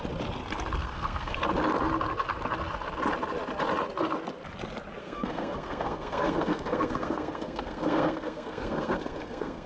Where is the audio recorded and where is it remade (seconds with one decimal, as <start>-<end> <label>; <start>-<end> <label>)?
0.0-0.8 recorded; 0.8-1.4 remade; 1.4-5.0 recorded; 5.0-9.7 remade